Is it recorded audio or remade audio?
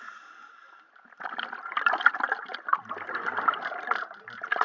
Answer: recorded